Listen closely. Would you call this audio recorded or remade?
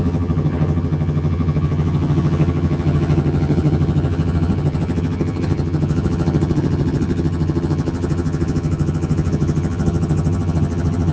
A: remade